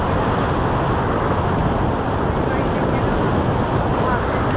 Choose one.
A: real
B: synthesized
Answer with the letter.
A